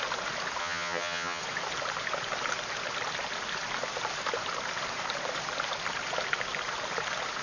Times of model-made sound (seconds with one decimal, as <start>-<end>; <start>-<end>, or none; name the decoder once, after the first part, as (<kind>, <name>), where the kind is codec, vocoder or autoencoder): 0.6-1.4 (vocoder, HiFi-GAN)